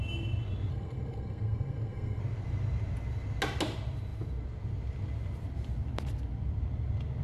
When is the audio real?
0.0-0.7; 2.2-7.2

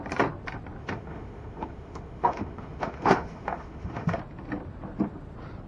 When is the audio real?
0.0-0.8; 4.2-5.7

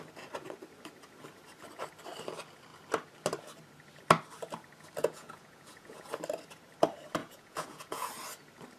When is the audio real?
0.0-5.0; 6.1-7.2; 8.1-8.8

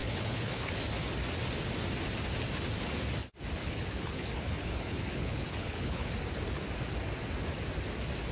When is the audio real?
0.7-3.6; 6.1-8.3

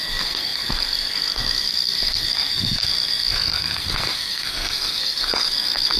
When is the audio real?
none

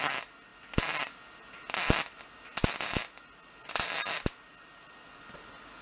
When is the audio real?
0.0-5.8

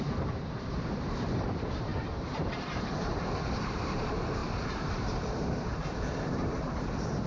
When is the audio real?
none

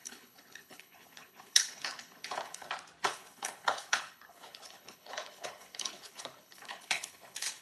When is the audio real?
2.7-3.1